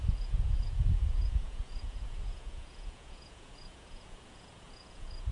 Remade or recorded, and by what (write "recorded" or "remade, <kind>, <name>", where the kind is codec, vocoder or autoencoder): remade, vocoder, Vocos